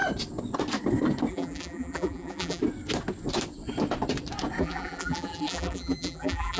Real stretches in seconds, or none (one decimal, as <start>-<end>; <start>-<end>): 0.0-1.3; 2.6-4.6